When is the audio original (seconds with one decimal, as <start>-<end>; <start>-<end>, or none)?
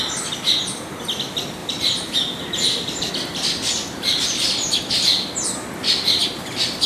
0.0-1.6; 3.1-6.9